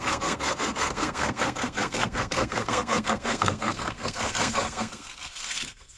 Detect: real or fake fake